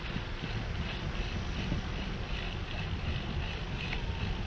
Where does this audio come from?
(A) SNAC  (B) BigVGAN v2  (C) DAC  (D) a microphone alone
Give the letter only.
D